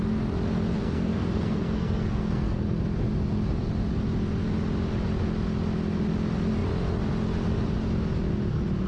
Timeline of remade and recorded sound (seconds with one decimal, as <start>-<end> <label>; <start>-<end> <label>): 0.0-0.8 recorded; 0.8-2.8 remade; 2.8-8.9 recorded

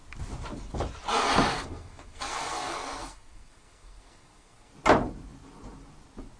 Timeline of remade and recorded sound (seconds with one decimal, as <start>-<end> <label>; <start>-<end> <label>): 0.0-1.5 recorded; 1.5-4.7 remade; 4.7-6.4 recorded

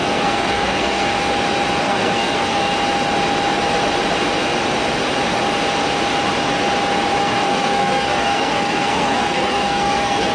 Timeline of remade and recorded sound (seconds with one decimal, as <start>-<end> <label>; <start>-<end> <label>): 0.0-1.1 remade; 1.1-1.8 recorded; 1.8-2.7 remade; 2.7-7.2 recorded; 7.2-10.3 remade

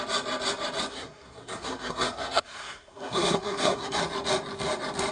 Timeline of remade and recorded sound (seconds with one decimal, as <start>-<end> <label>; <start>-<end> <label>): 0.0-0.9 recorded; 0.9-4.0 remade; 4.0-5.1 recorded

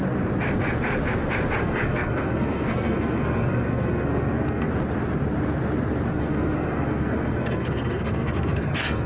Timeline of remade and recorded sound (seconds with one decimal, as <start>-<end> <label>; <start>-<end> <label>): 0.0-1.6 recorded; 1.6-4.7 remade; 4.7-6.1 recorded; 6.1-9.1 remade

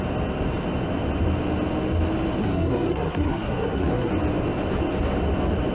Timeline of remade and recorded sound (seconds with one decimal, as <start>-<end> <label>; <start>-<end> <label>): 0.0-2.4 recorded; 2.4-4.1 remade; 4.1-5.7 recorded

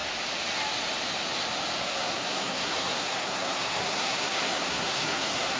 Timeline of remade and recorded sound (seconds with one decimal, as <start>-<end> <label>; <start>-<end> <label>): 0.0-1.8 recorded; 1.8-5.6 remade